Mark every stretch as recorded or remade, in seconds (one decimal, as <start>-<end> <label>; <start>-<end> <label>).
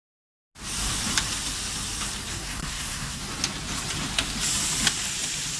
0.0-2.3 recorded; 2.3-3.2 remade; 3.2-5.6 recorded